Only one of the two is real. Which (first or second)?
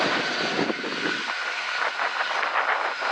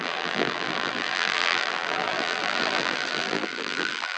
first